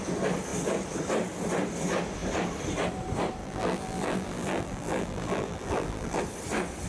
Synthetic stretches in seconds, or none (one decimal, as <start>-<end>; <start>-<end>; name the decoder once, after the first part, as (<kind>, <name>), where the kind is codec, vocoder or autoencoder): 3.4-6.2 (vocoder, BigVGAN v2)

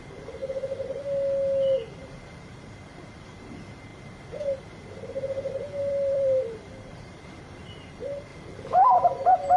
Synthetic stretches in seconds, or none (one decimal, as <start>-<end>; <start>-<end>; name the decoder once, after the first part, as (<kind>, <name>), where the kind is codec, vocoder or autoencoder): 0.0-0.4 (vocoder, BigVGAN v2); 2.0-3.9; 5.9-9.6

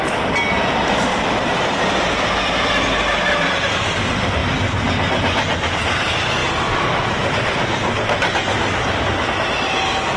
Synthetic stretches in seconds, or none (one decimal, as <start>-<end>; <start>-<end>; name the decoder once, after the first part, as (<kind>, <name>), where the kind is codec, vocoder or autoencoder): 1.1-1.8 (vocoder, BigVGAN v2)

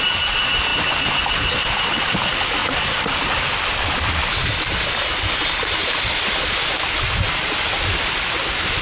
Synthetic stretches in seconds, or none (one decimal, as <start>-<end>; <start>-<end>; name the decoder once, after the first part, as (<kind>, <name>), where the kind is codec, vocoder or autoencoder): 2.6-4.7 (vocoder, BigVGAN v2)

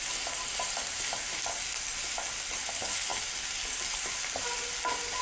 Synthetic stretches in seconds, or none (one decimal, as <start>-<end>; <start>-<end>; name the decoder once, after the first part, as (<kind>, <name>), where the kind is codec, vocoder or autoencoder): none

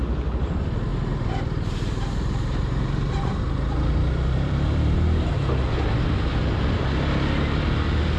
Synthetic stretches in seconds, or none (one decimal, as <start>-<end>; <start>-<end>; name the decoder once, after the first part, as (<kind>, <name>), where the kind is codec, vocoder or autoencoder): 0.9-5.5 (vocoder, BigVGAN v2)

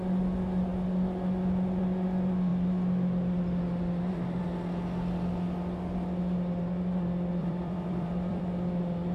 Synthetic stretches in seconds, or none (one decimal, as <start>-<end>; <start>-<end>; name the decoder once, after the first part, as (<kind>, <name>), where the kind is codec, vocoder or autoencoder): 7.4-8.4 (vocoder, BigVGAN v2)

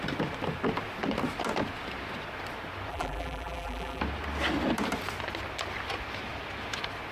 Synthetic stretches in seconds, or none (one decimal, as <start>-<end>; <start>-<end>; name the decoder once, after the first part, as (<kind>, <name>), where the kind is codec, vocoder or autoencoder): 2.9-4.0 (vocoder, BigVGAN v2)